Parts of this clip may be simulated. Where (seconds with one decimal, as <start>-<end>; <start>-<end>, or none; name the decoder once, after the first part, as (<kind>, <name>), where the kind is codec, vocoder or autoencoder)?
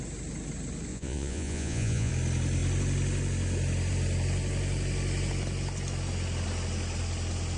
0.9-2.1 (vocoder, Vocos)